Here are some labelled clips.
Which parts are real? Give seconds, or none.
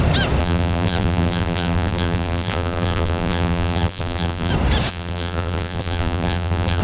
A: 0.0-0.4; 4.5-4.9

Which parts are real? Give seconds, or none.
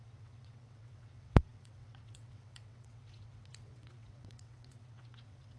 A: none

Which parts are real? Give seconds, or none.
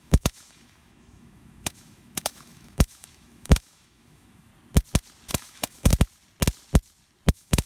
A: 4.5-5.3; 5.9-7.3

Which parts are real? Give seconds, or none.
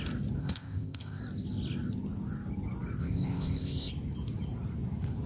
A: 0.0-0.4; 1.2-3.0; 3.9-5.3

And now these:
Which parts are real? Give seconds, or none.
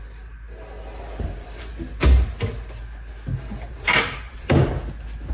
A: 0.0-1.1; 1.7-3.7; 4.6-5.3